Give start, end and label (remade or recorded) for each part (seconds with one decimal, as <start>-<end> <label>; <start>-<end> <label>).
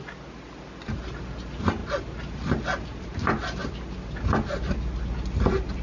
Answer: 0.0-5.8 recorded